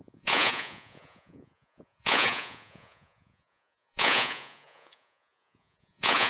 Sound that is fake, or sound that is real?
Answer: fake